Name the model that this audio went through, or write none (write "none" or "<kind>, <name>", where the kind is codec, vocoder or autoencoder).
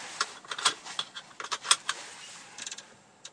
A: none